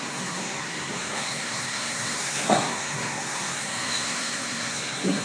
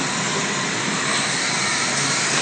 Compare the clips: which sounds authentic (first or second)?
second